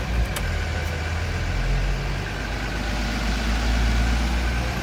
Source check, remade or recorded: recorded